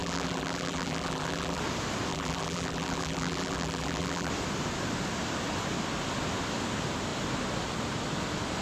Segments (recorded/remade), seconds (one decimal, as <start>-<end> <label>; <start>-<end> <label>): 0.0-1.6 remade; 1.6-2.1 recorded; 2.1-4.3 remade; 4.3-8.6 recorded